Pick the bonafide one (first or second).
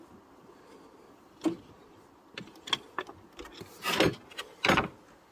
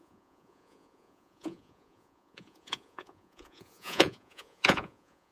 first